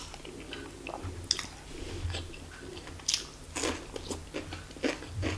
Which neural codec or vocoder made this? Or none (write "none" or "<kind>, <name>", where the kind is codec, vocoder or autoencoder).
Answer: none